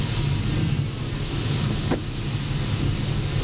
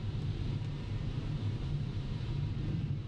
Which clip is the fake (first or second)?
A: second